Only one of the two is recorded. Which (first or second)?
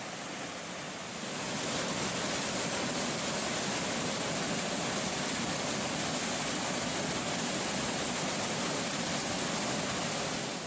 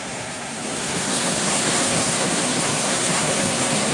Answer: first